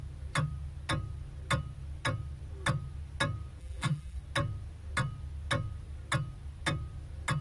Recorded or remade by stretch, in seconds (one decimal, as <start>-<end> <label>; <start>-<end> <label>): 0.0-3.6 recorded; 3.6-4.2 remade; 4.2-7.4 recorded